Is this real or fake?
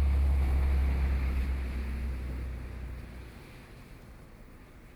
real